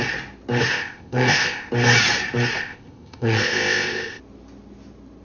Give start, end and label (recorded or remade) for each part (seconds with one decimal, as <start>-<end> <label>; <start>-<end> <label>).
0.0-0.7 recorded; 0.7-1.7 remade; 1.7-2.6 recorded; 2.6-4.2 remade; 4.2-5.2 recorded

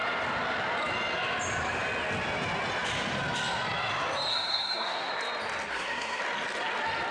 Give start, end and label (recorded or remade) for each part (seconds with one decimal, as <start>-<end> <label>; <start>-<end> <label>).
0.0-4.3 recorded; 4.3-5.1 remade; 5.1-5.7 recorded; 5.7-6.2 remade; 6.2-7.1 recorded

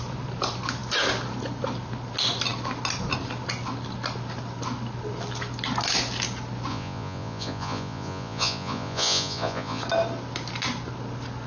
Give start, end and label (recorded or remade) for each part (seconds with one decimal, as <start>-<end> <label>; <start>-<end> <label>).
0.0-6.7 recorded; 6.7-9.8 remade; 9.8-11.5 recorded

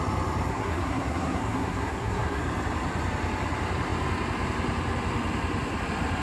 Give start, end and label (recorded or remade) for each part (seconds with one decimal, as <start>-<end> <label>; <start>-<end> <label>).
0.0-0.5 recorded; 0.5-2.4 remade; 2.4-6.2 recorded

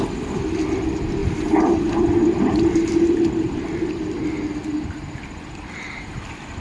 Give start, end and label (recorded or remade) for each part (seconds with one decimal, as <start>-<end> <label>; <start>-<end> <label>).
0.0-1.2 recorded; 1.2-4.2 remade; 4.2-6.6 recorded

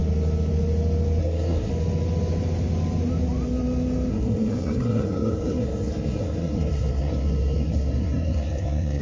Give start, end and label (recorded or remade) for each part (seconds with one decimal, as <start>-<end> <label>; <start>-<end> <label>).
0.0-1.2 recorded; 1.2-1.7 remade; 1.7-4.1 recorded; 4.1-9.0 remade